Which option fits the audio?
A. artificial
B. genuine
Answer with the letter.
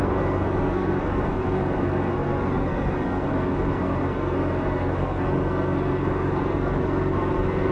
A